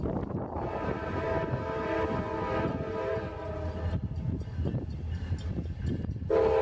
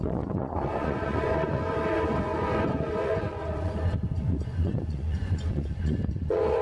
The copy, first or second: second